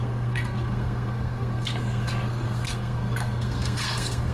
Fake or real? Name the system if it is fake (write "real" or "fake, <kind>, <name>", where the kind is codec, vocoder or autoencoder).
fake, codec, SNAC